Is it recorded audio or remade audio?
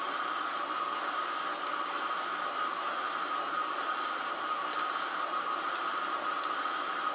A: recorded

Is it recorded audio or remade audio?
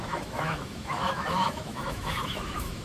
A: remade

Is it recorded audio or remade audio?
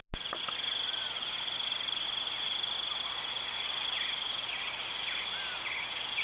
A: recorded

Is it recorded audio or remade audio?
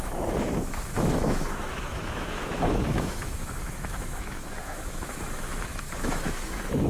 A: remade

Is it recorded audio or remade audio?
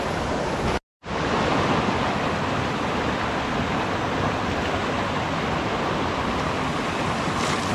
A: recorded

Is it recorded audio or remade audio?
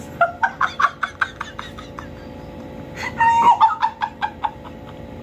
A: recorded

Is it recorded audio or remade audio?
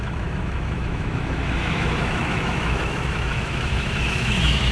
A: remade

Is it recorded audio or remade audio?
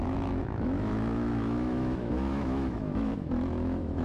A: remade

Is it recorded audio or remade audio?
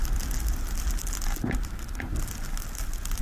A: recorded